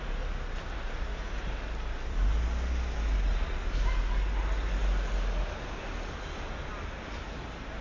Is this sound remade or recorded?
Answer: recorded